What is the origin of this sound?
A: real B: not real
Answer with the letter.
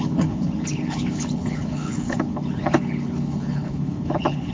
B